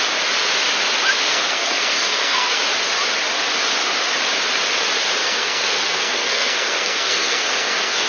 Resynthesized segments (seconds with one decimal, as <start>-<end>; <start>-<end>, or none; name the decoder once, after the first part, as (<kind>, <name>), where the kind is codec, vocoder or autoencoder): 1.2-2.6 (codec, SNAC); 5.2-8.1